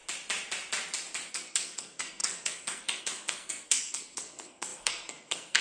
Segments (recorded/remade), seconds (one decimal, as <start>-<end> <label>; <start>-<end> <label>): 0.0-1.3 recorded; 1.3-5.6 remade